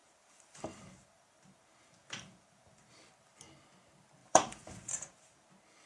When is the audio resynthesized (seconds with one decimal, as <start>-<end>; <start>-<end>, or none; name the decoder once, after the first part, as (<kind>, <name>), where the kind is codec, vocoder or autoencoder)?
0.0-3.0 (vocoder, BigVGAN v2); 4.2-5.5